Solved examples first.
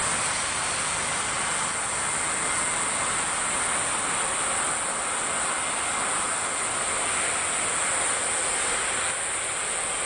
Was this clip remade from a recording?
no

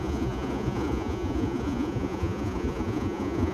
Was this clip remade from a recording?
yes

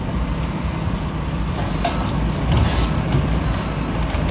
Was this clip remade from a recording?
no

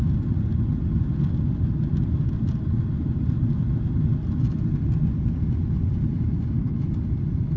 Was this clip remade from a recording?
no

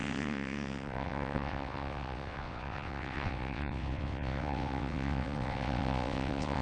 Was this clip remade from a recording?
yes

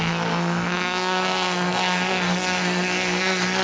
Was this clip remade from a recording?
yes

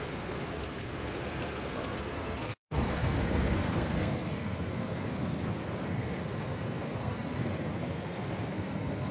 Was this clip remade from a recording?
yes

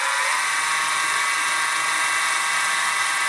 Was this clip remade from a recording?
no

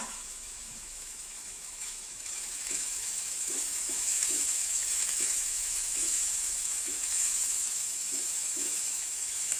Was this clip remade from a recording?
yes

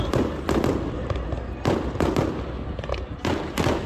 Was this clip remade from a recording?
no